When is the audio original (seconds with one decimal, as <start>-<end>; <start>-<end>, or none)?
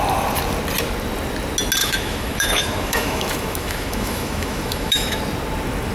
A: 0.0-1.8; 5.2-5.9